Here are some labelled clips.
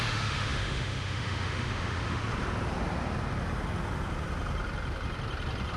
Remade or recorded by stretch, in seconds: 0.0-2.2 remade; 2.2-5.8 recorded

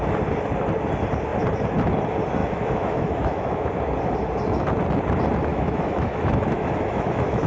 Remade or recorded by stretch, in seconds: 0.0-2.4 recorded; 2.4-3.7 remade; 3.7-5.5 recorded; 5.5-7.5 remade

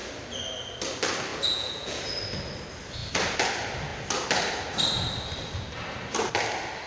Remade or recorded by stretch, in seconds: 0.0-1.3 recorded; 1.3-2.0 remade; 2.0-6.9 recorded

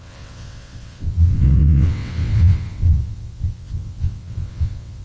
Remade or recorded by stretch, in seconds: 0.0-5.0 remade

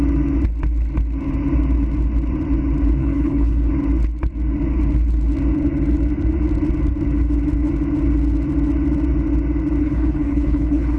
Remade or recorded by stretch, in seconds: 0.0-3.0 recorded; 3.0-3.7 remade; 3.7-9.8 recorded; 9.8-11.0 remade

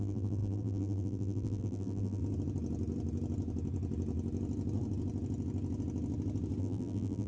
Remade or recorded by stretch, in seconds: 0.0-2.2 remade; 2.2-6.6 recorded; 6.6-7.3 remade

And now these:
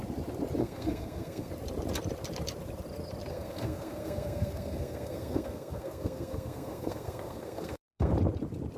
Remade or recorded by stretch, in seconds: 0.0-0.6 recorded; 0.6-1.5 remade; 1.5-3.3 recorded; 3.3-8.1 remade; 8.1-8.8 recorded